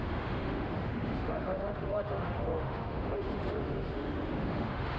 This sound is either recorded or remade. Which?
remade